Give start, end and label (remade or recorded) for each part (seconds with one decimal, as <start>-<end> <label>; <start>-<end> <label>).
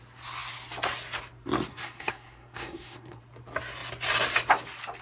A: 0.0-1.7 recorded; 1.7-3.2 remade; 3.2-5.0 recorded